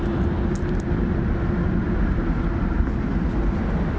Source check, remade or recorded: recorded